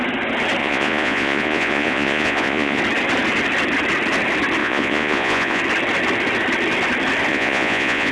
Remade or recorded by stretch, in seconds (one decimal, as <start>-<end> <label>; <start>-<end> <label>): 0.0-0.6 recorded; 0.6-2.8 remade; 2.8-4.6 recorded; 4.6-5.6 remade; 5.6-7.3 recorded; 7.3-8.1 remade

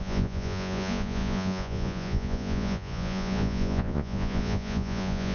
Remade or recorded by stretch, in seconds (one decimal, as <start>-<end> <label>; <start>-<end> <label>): 0.0-5.3 remade

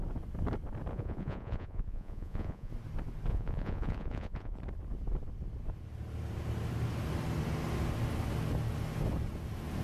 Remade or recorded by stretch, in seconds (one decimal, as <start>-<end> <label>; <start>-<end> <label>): 0.0-0.9 recorded; 0.9-2.7 remade; 2.7-3.3 recorded; 3.3-4.6 remade; 4.6-9.8 recorded

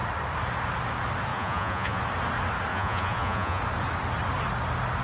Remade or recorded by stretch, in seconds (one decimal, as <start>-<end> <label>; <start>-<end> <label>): 0.0-1.3 recorded; 1.3-2.0 remade; 2.0-2.7 recorded; 2.7-3.6 remade; 3.6-5.0 recorded

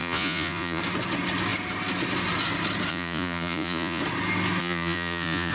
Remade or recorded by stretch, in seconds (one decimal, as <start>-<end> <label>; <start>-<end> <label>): 0.0-0.8 remade; 0.8-2.9 recorded; 2.9-4.0 remade; 4.0-4.6 recorded; 4.6-5.5 remade

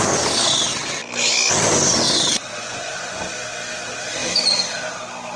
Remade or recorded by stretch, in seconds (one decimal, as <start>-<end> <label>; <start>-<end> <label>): 0.0-2.5 recorded; 2.5-3.2 remade; 3.2-5.4 recorded